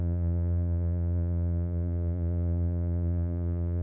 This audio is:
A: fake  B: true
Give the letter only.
A